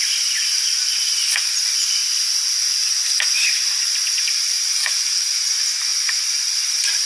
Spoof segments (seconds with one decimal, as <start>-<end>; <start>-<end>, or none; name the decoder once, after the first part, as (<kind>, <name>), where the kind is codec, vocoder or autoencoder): 0.0-2.0 (vocoder, BigVGAN v2); 4.2-7.1

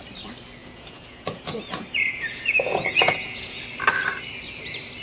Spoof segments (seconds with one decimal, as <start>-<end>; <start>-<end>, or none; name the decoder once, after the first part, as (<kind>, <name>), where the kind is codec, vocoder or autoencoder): 0.6-3.6 (vocoder, Vocos)

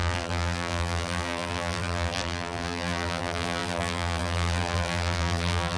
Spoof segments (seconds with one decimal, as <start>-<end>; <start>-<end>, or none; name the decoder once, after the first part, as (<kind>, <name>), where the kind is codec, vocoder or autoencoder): 0.0-5.8 (vocoder, BigVGAN v2)

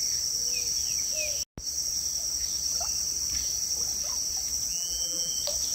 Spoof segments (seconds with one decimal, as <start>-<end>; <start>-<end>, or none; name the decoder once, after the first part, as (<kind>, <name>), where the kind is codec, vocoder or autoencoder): 4.7-5.3 (vocoder, BigVGAN v2)

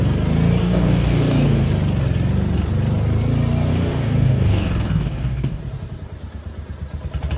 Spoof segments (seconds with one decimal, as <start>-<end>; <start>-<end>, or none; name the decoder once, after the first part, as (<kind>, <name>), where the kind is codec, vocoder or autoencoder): 0.6-1.7 (codec, DAC); 3.7-5.6

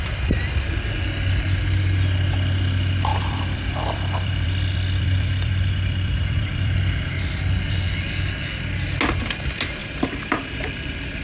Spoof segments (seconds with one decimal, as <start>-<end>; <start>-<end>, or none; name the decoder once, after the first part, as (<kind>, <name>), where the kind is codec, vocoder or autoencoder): 3.1-7.1 (vocoder, BigVGAN v2); 9.8-11.2

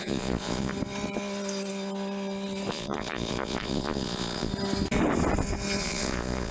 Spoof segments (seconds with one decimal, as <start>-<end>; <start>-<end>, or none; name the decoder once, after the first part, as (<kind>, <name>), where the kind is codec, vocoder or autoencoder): 0.0-0.7 (vocoder, Vocos); 2.7-4.5; 5.8-6.5

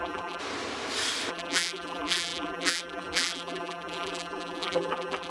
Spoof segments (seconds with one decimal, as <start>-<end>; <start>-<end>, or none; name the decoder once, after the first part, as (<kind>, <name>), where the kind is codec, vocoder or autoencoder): 0.0-0.4 (vocoder, BigVGAN v2); 1.3-5.3